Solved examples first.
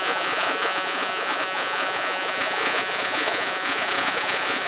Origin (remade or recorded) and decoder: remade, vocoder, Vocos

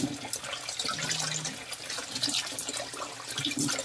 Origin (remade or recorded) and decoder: recorded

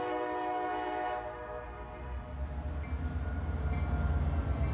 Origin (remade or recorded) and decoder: recorded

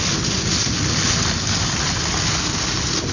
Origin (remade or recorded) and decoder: recorded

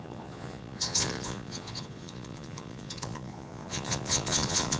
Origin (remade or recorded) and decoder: remade, vocoder, Vocos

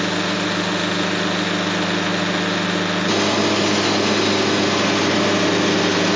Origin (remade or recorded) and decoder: recorded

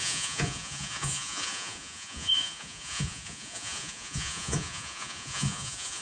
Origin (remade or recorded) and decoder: remade, vocoder, Vocos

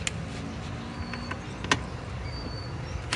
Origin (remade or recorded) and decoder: recorded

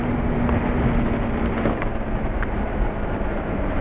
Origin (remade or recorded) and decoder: recorded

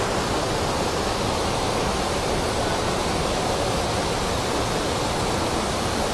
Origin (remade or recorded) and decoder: recorded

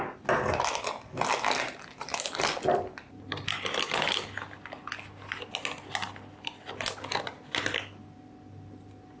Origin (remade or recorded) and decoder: recorded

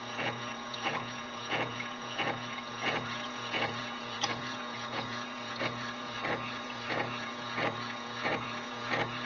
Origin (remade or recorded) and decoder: remade, vocoder, Vocos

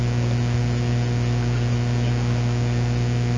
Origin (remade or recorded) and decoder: recorded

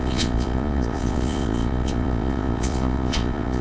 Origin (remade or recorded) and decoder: remade, vocoder, Vocos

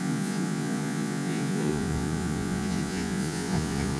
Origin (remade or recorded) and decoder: remade, vocoder, Vocos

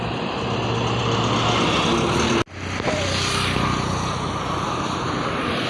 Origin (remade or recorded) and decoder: recorded